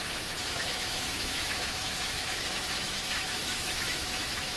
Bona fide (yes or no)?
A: no